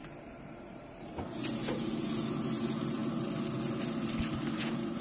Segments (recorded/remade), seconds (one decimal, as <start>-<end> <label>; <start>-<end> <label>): 0.0-1.2 remade; 1.2-5.0 recorded